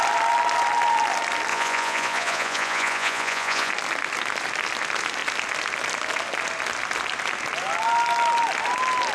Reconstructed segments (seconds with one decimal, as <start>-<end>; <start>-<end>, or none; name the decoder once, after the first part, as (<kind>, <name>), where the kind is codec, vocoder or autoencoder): 1.5-3.7 (vocoder, Vocos)